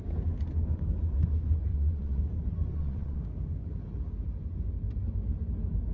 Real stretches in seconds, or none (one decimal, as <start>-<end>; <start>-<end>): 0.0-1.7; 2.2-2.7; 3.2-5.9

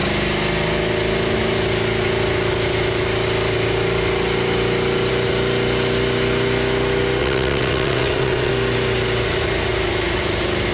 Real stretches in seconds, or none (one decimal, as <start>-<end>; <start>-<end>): 0.0-7.2; 8.5-10.7

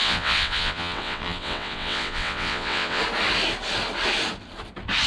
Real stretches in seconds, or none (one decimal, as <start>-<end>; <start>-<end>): 3.0-5.1